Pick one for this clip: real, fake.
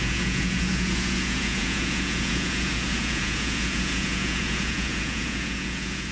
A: fake